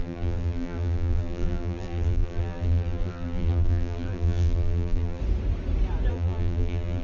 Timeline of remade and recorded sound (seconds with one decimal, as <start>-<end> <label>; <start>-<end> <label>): 0.0-5.2 remade; 5.2-6.1 recorded; 6.1-7.0 remade